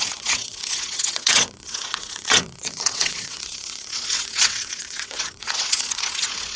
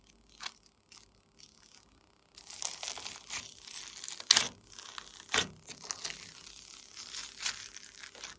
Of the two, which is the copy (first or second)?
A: first